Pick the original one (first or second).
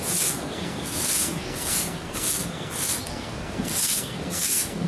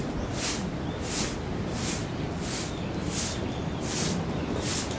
second